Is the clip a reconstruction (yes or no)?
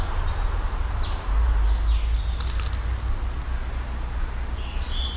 no